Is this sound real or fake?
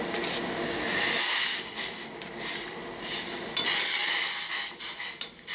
real